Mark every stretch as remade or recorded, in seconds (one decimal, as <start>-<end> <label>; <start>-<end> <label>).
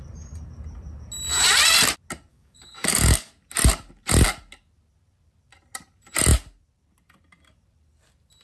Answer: 0.0-2.3 recorded; 2.3-3.3 remade; 3.3-8.4 recorded